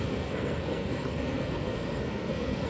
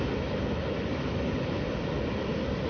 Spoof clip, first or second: first